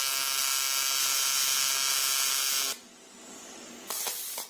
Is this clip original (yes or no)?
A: yes